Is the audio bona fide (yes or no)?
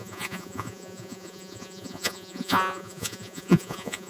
no